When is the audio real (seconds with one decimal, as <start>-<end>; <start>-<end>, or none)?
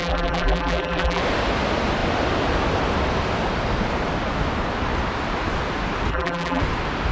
1.2-6.1; 6.6-7.1